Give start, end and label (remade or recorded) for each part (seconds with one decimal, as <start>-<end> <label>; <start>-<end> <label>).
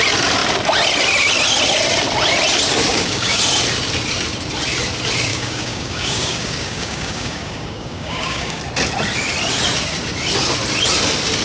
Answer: 0.0-2.9 recorded; 2.9-3.4 remade; 3.4-5.3 recorded; 5.3-8.6 remade; 8.6-11.4 recorded